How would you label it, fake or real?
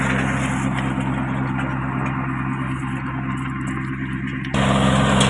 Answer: real